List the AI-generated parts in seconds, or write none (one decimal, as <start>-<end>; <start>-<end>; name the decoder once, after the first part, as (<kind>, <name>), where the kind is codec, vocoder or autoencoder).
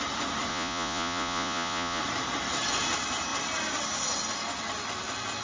0.5-2.0 (vocoder, Vocos)